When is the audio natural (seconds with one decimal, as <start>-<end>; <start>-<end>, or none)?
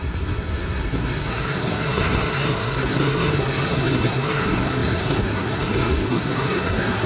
none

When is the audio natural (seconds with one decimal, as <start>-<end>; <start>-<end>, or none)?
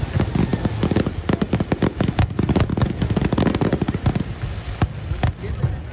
0.0-5.9